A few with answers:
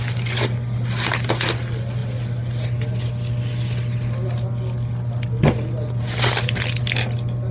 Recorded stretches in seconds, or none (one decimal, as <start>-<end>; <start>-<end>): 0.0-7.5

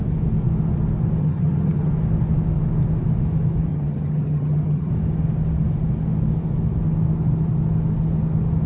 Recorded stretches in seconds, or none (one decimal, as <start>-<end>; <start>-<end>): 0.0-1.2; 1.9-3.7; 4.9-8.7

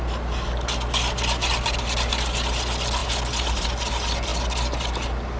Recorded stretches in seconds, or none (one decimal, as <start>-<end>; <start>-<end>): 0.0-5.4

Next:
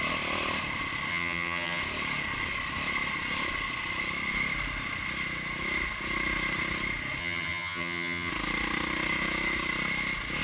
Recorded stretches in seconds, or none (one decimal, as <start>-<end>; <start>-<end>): 0.0-1.1; 1.8-7.2; 8.3-10.4

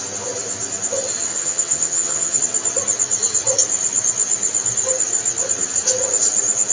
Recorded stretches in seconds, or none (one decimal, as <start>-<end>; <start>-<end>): 0.0-1.3; 2.4-6.7

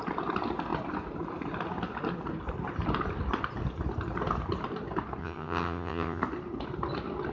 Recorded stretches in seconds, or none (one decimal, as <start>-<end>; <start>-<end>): 0.0-5.2; 6.2-7.3

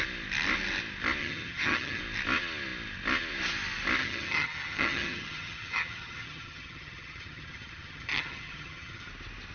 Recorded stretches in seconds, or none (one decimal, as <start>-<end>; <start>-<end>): 0.0-1.2; 2.0-4.0; 9.1-9.5

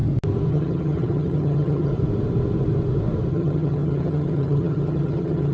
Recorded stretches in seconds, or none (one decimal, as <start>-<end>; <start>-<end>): 0.0-0.5; 1.9-3.3